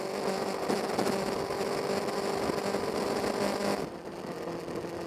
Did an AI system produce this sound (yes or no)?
no